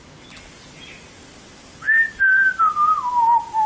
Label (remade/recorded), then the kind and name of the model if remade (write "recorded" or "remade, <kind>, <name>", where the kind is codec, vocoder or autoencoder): recorded